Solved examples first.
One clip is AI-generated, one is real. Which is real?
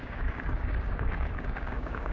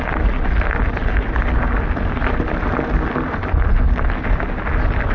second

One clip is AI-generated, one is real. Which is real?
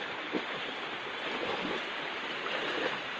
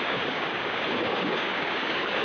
first